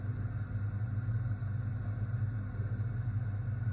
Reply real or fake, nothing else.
real